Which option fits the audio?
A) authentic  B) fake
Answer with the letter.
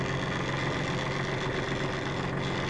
A